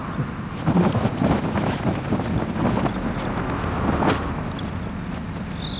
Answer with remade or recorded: recorded